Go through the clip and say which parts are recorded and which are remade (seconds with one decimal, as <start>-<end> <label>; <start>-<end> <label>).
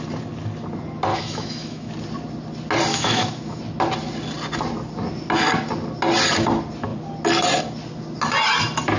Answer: 0.0-1.1 recorded; 1.1-1.9 remade; 1.9-2.9 recorded; 2.9-3.6 remade; 3.6-9.0 recorded